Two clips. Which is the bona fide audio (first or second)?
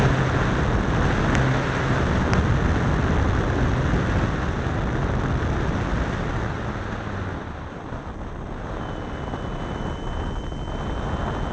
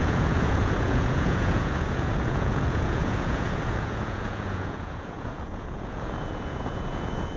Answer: first